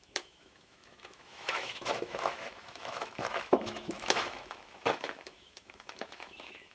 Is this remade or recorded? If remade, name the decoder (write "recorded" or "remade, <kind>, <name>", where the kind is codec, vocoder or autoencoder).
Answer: remade, autoencoder, DAC-VAE